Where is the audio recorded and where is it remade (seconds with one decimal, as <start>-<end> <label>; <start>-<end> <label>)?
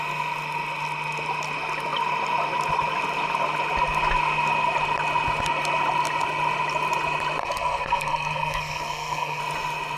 0.0-7.4 recorded; 7.4-9.4 remade; 9.4-10.0 recorded